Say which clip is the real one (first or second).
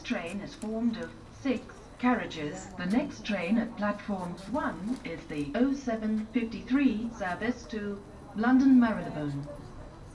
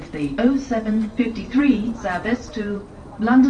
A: first